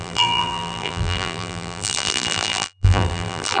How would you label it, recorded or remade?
remade